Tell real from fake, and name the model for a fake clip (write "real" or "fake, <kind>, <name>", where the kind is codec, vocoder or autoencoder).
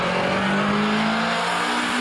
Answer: real